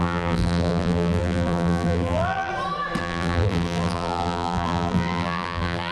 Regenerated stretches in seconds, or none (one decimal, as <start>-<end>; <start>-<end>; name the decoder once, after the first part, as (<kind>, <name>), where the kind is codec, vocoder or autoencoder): 0.0-2.5 (vocoder, BigVGAN v2); 3.0-5.9